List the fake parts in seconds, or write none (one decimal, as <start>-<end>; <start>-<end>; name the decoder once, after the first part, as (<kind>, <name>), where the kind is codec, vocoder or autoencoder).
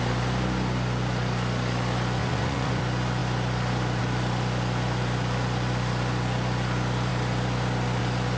2.2-2.8 (vocoder, Vocos)